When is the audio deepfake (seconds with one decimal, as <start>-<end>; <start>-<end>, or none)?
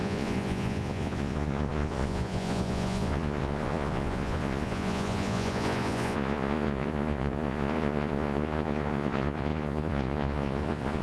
0.0-11.0